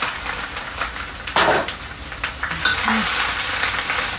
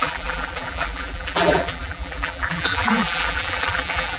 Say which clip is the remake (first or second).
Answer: second